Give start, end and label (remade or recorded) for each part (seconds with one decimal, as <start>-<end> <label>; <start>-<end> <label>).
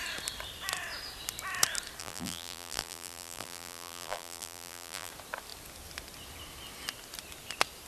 0.0-2.0 recorded; 2.0-5.1 remade; 5.1-7.9 recorded